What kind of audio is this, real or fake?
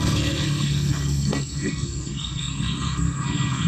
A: fake